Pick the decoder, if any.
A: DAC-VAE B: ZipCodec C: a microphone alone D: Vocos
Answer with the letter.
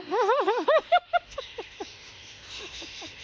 A